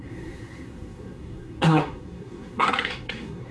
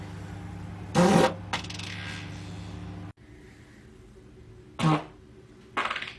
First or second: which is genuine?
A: second